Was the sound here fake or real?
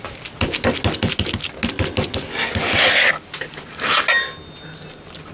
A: real